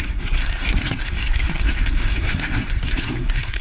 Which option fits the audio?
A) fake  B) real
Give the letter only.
A